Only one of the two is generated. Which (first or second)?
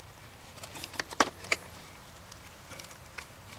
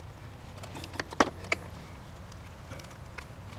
first